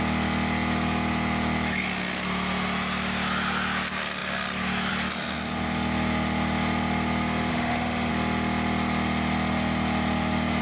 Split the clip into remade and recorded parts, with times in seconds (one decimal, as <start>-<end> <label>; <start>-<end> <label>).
0.0-7.5 recorded; 7.5-8.1 remade; 8.1-10.6 recorded